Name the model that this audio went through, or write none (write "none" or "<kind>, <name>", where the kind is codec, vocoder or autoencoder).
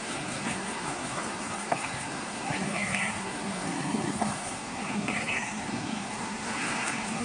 codec, SNAC